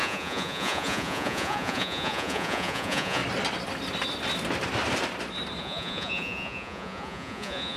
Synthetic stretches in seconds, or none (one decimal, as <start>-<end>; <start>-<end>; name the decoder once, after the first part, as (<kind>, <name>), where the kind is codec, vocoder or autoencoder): 0.0-3.2 (vocoder, Vocos); 5.6-7.8